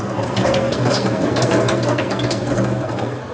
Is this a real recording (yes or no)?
no